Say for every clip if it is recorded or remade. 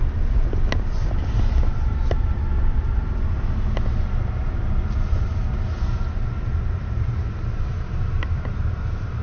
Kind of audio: recorded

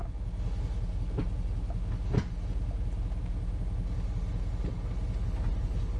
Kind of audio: recorded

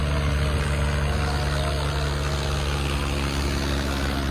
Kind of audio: recorded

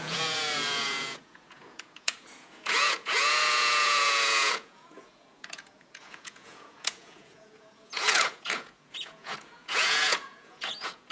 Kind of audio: remade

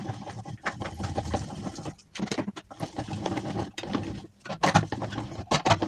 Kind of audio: recorded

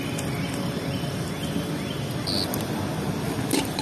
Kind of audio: recorded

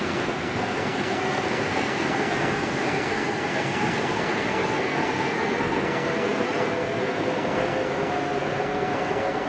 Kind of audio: remade